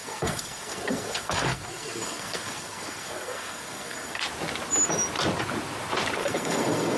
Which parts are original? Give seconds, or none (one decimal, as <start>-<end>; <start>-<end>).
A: 4.2-6.2